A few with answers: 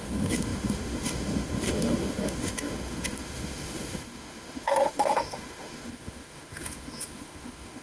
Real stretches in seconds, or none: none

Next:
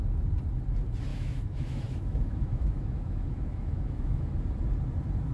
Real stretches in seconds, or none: 0.0-1.1; 4.3-5.3

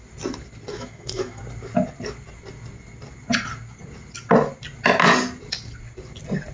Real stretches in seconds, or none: 0.0-0.7; 1.4-6.5

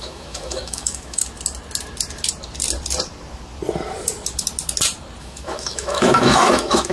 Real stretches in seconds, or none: 1.2-5.2